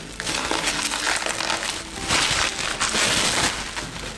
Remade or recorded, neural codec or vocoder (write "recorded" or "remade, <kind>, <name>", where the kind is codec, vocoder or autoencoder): recorded